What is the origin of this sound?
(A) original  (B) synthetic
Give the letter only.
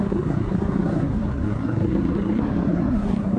B